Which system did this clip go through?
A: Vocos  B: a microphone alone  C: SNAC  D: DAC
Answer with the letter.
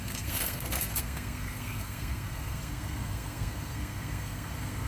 C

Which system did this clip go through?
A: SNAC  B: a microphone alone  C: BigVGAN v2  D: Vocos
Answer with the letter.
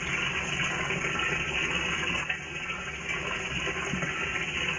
B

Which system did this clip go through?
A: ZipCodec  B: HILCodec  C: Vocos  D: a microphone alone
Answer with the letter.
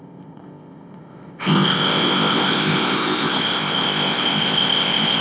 A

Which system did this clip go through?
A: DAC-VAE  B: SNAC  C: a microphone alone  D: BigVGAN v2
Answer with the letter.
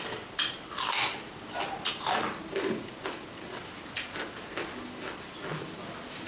C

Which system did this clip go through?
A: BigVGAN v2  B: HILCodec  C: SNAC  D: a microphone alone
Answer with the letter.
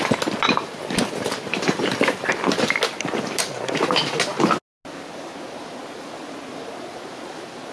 D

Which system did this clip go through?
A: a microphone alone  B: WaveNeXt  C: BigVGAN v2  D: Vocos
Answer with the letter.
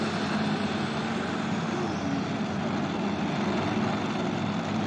A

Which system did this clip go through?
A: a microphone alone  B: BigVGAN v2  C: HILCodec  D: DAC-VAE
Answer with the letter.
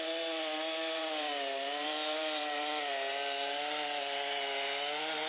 B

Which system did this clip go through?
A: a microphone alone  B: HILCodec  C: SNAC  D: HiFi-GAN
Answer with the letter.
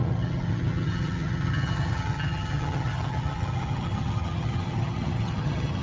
D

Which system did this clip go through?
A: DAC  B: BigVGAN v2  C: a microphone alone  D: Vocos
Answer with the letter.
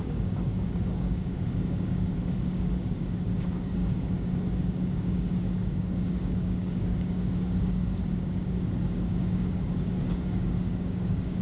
A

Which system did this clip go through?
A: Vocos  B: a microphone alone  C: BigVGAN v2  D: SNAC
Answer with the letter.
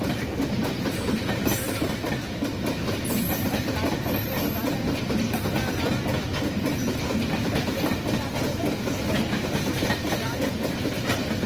B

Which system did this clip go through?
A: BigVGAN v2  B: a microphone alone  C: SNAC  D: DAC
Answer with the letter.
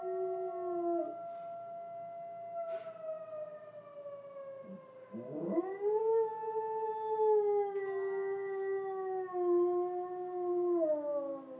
B